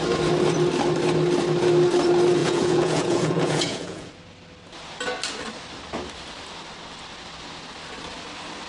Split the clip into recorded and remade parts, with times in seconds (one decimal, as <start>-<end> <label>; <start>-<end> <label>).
0.0-2.4 recorded; 2.4-4.1 remade; 4.1-8.7 recorded